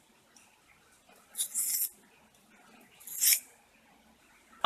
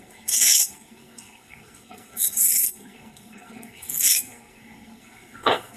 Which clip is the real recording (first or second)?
first